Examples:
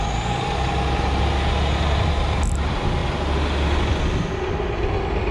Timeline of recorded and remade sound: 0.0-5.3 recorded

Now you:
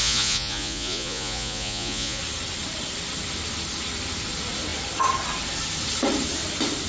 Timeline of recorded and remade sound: 0.0-2.2 remade; 2.2-6.9 recorded